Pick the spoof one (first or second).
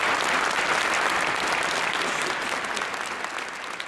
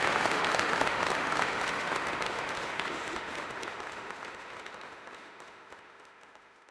second